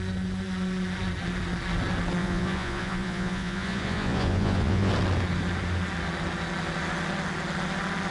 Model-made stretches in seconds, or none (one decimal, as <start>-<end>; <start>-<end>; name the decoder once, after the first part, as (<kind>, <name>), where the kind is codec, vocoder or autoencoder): 2.2-4.9 (vocoder, Vocos)